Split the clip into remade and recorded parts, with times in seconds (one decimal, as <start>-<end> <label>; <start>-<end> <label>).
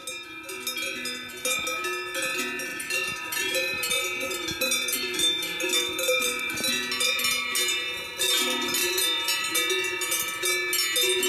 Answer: 0.0-2.7 recorded; 2.7-6.7 remade; 6.7-8.8 recorded; 8.8-9.5 remade; 9.5-11.3 recorded